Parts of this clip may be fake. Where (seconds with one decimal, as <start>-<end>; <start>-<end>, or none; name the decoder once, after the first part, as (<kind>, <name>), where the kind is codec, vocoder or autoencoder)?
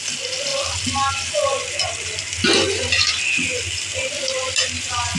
none